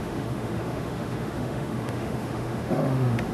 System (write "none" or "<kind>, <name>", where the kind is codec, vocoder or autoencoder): autoencoder, DAC-VAE